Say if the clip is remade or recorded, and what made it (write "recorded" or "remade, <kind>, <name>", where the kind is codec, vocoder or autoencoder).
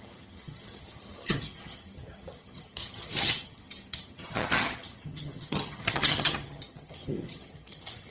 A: remade, vocoder, HiFi-GAN